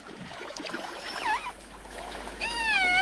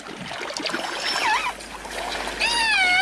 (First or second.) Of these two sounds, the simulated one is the first